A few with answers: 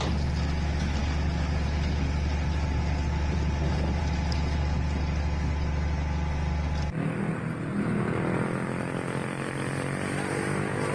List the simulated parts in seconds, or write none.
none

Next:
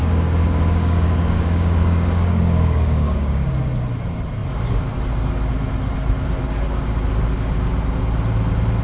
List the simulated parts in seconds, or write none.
0.0-3.5 (codec, DAC)